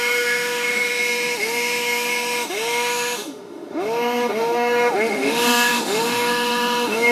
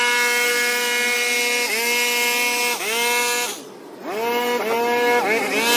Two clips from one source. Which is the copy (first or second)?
first